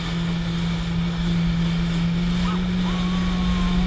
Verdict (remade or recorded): recorded